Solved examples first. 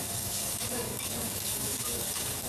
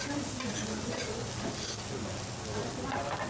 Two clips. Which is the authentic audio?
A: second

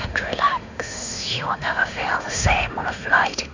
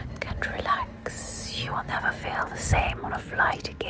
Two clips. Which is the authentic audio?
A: second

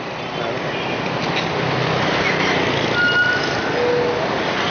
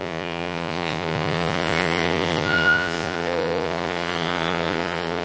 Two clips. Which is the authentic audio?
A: first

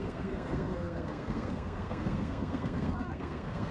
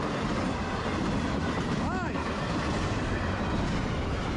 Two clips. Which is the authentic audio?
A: second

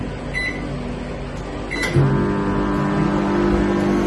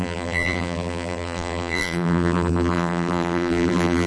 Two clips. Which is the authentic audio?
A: first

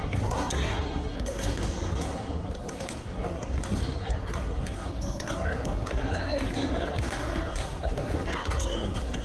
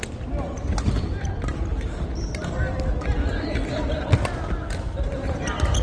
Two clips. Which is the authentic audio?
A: second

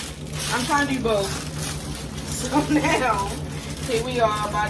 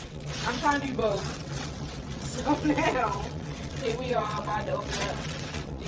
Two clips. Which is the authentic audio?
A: first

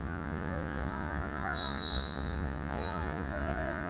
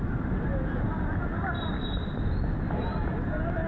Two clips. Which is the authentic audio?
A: second